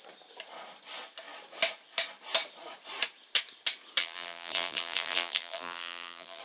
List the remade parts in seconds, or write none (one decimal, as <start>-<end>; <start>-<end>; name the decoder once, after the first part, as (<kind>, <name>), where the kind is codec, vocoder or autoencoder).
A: 4.0-6.4 (vocoder, BigVGAN v2)